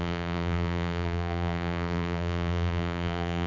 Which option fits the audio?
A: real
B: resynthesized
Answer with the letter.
B